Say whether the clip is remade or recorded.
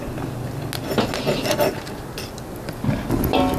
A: recorded